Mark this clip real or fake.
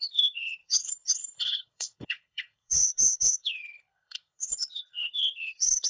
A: fake